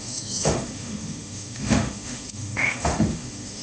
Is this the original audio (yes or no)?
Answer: no